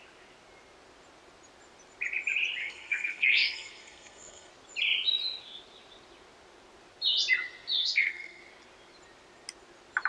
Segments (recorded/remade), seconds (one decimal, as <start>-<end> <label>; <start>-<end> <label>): 0.0-2.6 recorded; 2.6-4.5 remade; 4.5-7.8 recorded; 7.8-8.4 remade; 8.4-10.1 recorded